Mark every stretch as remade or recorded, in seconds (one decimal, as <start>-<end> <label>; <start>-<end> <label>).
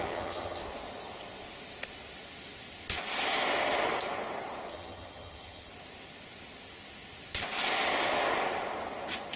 0.0-0.6 remade; 0.6-4.7 recorded; 4.7-5.7 remade; 5.7-9.4 recorded